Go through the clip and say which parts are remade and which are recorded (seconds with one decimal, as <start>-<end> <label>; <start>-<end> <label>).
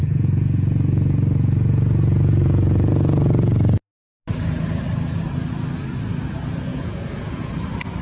0.0-2.9 remade; 2.9-6.7 recorded; 6.7-7.5 remade; 7.5-8.0 recorded